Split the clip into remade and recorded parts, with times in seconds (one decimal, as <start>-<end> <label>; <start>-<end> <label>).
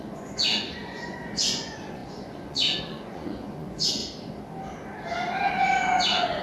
0.0-4.0 remade; 4.0-5.5 recorded; 5.5-6.4 remade